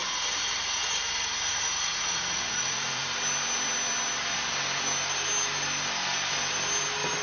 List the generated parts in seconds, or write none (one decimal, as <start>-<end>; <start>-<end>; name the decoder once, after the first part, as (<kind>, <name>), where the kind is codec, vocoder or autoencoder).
0.0-3.0 (vocoder, Vocos)